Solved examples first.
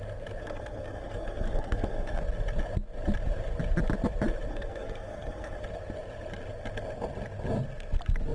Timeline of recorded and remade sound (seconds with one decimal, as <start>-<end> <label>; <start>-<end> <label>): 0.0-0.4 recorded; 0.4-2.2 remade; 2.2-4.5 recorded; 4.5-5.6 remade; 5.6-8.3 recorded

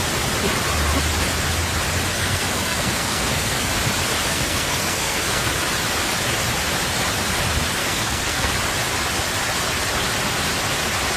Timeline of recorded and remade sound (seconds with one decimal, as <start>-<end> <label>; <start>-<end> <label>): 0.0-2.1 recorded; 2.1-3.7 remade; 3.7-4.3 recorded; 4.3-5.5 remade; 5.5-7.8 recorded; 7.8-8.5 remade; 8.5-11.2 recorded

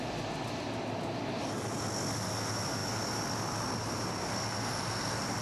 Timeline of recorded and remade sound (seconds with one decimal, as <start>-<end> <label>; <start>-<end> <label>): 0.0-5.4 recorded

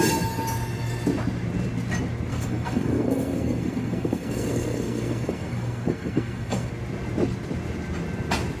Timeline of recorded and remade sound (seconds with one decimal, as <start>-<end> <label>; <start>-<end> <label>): 0.0-2.3 recorded; 2.3-6.7 remade; 6.7-8.6 recorded

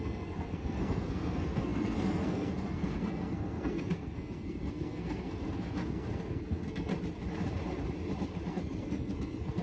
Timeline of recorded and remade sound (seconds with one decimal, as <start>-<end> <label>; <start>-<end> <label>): 0.0-6.9 remade; 6.9-8.5 recorded; 8.5-9.6 remade